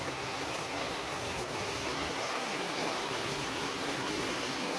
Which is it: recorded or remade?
remade